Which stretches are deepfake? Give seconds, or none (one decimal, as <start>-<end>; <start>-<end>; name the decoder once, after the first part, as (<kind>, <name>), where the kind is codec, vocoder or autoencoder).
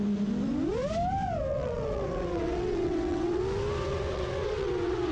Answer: 1.5-3.4 (vocoder, WaveNeXt); 3.9-5.1